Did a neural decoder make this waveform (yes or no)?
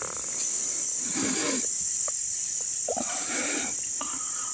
no